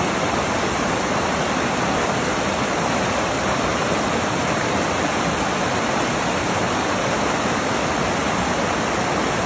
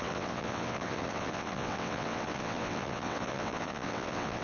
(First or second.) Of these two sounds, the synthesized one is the second